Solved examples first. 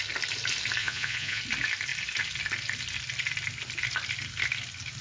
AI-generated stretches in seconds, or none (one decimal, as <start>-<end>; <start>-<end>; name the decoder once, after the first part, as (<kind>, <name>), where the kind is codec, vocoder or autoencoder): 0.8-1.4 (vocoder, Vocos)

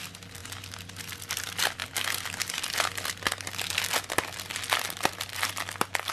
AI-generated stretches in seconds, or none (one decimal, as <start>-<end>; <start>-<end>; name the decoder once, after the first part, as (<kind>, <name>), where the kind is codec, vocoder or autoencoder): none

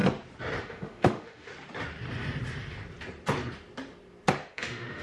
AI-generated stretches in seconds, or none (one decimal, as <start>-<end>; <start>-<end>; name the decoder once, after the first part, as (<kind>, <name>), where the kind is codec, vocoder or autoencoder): 0.6-1.5 (autoencoder, DAC-VAE); 4.5-5.0